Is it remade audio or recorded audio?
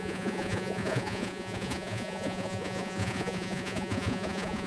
remade